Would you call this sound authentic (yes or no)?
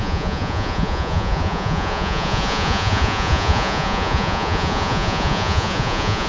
no